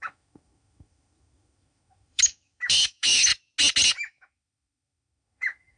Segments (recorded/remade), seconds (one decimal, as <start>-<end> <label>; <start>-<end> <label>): 0.0-3.3 remade; 3.3-3.9 recorded; 3.9-5.8 remade